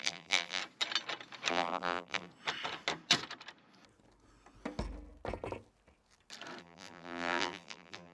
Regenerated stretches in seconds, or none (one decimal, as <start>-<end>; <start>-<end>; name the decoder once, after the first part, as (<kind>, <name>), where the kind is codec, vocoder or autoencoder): 0.0-0.6 (vocoder, BigVGAN v2); 1.5-2.3; 6.6-8.1